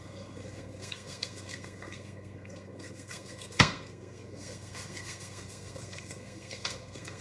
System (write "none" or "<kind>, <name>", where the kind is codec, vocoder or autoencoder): codec, SNAC